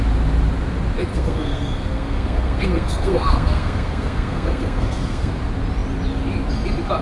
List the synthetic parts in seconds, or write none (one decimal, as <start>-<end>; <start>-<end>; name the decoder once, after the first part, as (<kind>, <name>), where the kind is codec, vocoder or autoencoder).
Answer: 1.1-5.3 (codec, SNAC)